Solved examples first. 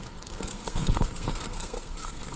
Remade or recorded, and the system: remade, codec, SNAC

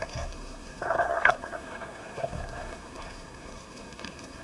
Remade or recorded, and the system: remade, codec, SNAC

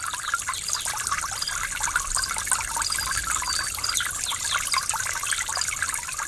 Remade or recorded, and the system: recorded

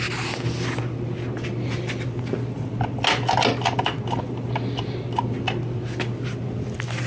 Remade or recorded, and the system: recorded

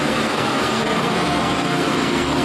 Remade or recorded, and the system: remade, codec, SNAC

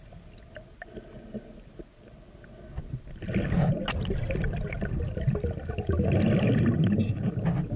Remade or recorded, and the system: recorded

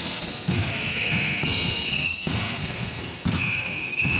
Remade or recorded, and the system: remade, codec, SNAC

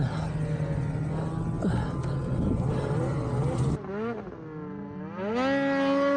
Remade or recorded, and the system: recorded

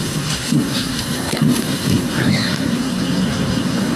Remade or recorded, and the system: remade, codec, SNAC